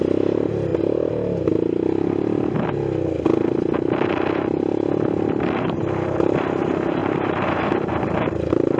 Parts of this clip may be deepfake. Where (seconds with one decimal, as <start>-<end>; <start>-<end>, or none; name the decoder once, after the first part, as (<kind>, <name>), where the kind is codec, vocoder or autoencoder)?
0.0-0.7 (vocoder, BigVGAN v2); 5.6-8.8